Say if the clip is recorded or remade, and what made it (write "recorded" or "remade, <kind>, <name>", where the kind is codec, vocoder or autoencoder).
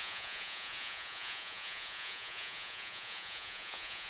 remade, vocoder, Vocos